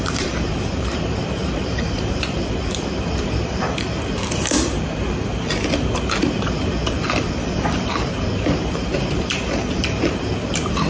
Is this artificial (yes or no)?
yes